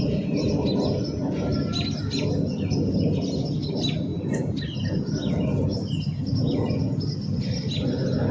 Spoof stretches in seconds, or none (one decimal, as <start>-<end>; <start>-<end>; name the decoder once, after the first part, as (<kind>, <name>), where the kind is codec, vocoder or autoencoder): none